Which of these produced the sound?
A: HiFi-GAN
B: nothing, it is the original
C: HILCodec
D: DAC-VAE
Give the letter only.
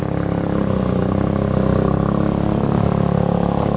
B